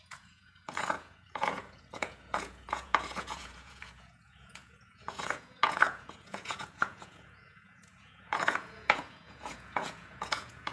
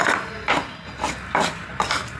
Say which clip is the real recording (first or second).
second